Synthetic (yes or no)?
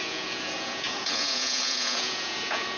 yes